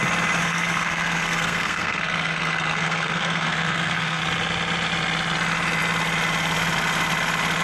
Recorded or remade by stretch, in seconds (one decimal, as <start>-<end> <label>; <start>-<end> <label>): 0.0-0.4 recorded; 0.4-4.2 remade; 4.2-7.6 recorded